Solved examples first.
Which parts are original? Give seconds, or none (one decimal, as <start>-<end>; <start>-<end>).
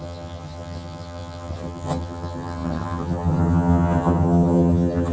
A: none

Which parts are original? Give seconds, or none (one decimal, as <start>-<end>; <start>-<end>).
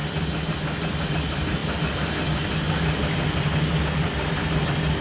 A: 0.0-5.0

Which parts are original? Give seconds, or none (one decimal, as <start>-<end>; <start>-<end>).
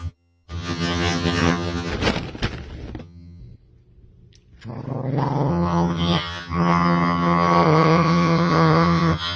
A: 1.9-3.0; 3.4-5.5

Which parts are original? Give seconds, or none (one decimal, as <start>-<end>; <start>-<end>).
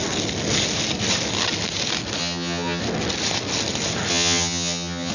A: 0.0-2.2; 2.8-4.1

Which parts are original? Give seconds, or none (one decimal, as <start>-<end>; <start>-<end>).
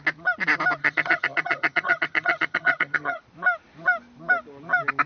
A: 0.0-0.8; 3.2-5.1